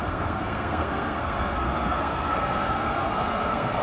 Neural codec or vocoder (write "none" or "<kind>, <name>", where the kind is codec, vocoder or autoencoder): codec, SNAC